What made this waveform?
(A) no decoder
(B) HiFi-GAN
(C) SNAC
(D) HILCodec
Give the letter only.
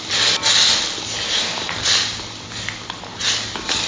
A